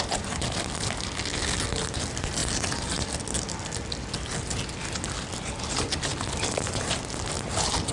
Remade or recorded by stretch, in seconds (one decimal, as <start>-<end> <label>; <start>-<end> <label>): 0.0-7.9 recorded